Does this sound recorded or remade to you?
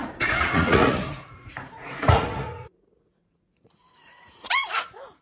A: remade